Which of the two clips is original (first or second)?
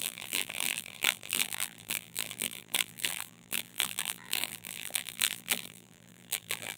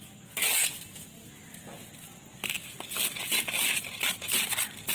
second